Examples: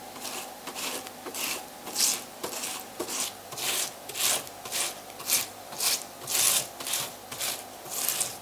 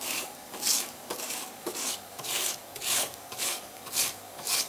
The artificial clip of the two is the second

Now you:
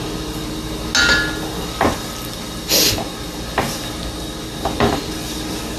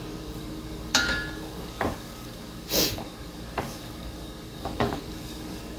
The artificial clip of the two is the second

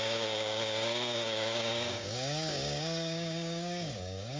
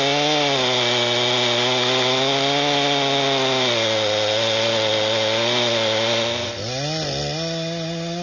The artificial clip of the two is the first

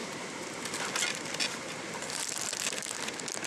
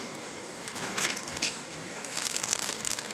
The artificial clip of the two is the second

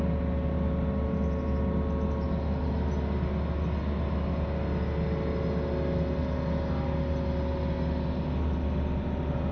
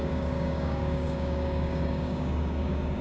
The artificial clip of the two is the second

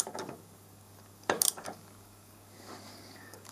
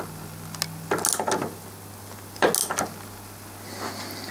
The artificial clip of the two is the first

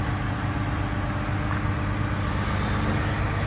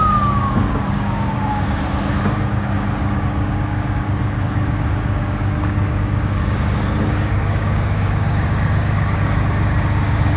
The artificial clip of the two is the second